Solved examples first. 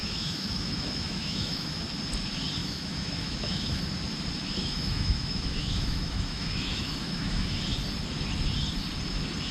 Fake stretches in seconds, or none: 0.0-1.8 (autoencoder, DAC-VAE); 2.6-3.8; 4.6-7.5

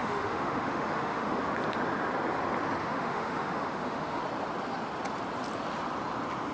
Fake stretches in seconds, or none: 0.0-1.4 (autoencoder, DAC-VAE); 2.8-4.2

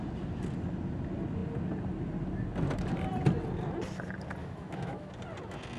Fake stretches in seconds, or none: 4.4-5.1 (autoencoder, DAC-VAE)

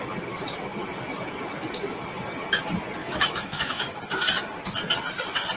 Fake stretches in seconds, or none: 3.0-4.0 (autoencoder, DAC-VAE)